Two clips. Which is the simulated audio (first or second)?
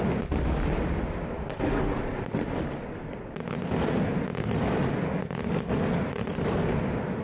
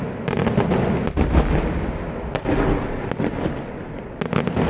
first